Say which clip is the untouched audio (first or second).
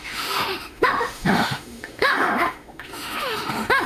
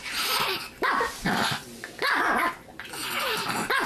second